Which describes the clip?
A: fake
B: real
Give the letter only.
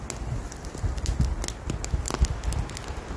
B